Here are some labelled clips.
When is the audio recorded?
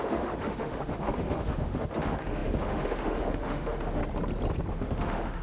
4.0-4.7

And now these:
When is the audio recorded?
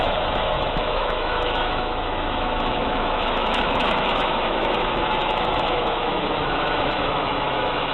none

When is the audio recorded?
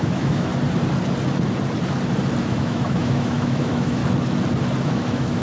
0.5-2.4; 4.0-4.8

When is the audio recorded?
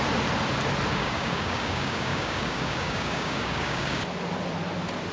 0.0-0.9; 4.0-5.1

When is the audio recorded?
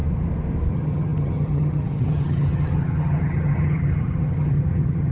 0.0-0.7